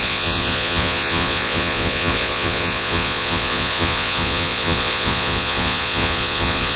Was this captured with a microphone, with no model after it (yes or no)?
no